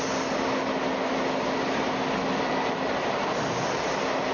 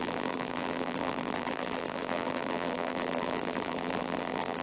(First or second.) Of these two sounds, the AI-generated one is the second